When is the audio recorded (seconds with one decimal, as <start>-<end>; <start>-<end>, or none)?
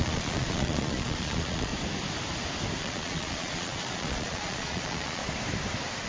1.7-2.8; 5.2-6.1